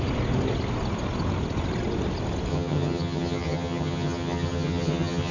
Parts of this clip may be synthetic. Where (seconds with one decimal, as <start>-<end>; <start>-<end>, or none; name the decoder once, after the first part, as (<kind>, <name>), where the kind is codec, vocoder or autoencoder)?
2.5-5.3 (vocoder, HiFi-GAN)